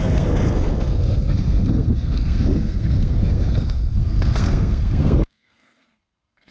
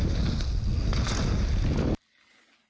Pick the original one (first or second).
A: second